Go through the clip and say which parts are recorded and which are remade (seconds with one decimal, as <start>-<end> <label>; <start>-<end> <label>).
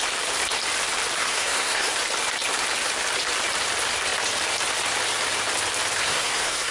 0.0-1.2 recorded; 1.2-1.9 remade; 1.9-6.0 recorded; 6.0-6.7 remade